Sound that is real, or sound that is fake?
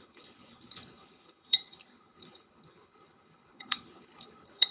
fake